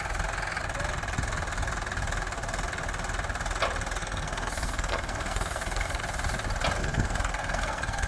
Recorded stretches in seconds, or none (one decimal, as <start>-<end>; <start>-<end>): 0.0-4.0; 6.0-6.8